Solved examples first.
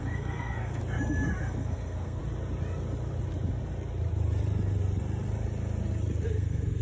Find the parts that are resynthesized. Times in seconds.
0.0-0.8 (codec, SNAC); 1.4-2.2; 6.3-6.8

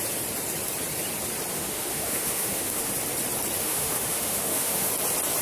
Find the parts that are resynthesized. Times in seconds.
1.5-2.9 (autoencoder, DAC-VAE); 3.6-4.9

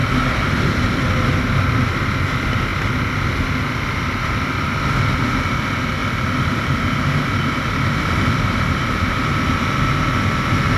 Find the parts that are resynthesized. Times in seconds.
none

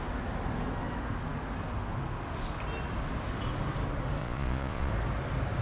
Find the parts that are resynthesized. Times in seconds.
4.2-4.9 (vocoder, Vocos)

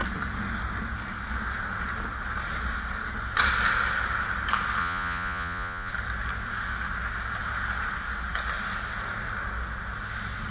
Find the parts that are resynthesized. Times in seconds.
4.8-5.9 (vocoder, Vocos)